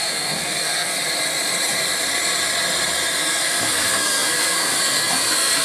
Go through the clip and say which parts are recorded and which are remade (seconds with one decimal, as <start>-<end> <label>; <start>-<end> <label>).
0.0-0.9 remade; 0.9-3.2 recorded; 3.2-5.6 remade